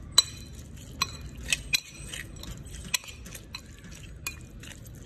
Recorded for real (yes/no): yes